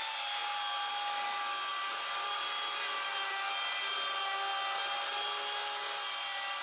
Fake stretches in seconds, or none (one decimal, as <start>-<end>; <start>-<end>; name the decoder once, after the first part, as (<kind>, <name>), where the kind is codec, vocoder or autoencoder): none